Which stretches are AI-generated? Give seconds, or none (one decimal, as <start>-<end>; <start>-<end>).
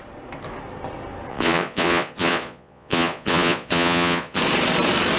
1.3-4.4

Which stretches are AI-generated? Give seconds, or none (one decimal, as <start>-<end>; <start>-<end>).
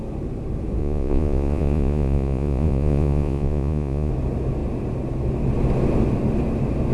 0.8-4.1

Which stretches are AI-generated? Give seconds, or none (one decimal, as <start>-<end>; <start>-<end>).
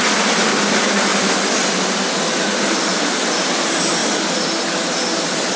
none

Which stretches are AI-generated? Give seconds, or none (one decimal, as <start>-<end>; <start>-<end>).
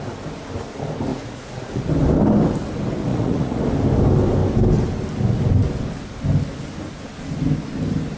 1.1-1.9; 3.1-3.6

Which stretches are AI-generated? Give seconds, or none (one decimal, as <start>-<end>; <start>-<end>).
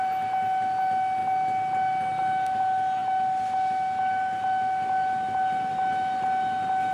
none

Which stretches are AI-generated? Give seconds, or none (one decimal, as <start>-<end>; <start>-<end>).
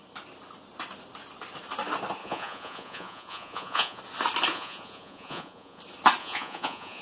2.2-4.0; 4.5-5.8; 6.2-7.0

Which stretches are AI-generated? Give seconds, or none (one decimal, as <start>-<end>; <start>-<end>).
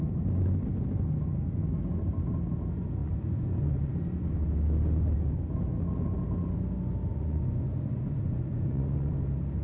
3.0-3.9; 7.1-9.1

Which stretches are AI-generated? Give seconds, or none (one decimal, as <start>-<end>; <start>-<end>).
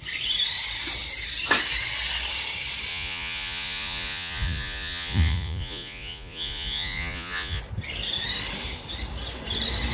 2.9-7.6